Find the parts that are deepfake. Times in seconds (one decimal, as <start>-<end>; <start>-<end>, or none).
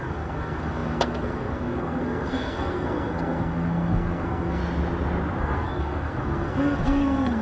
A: 0.0-4.6; 5.4-7.4